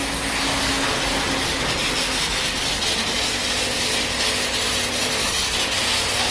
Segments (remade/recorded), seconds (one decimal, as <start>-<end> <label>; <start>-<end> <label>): 0.0-6.3 recorded